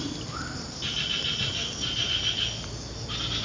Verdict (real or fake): real